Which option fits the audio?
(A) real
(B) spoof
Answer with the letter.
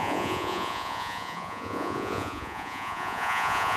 B